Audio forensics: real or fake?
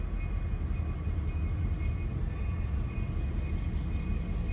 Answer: real